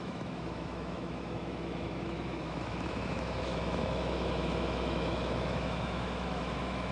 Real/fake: fake